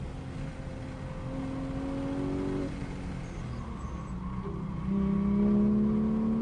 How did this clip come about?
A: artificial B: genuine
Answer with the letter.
B